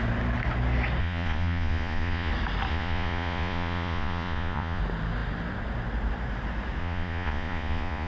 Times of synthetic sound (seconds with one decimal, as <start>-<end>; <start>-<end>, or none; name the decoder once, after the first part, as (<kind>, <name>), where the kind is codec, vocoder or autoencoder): 1.0-2.3 (vocoder, Vocos); 2.7-4.8; 6.8-8.1

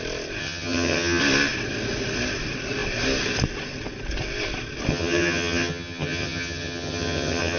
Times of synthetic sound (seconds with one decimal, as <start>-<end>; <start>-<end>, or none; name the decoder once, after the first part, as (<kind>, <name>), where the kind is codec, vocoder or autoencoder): 0.4-1.2 (vocoder, HiFi-GAN); 4.9-7.6